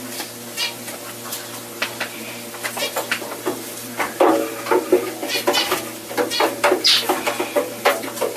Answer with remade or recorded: recorded